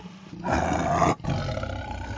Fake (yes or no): no